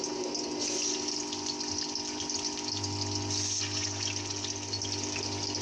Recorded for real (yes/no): yes